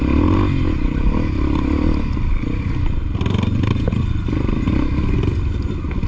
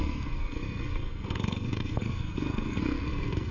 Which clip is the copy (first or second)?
second